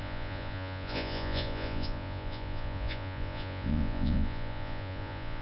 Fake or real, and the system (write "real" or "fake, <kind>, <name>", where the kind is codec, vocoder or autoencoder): fake, vocoder, Vocos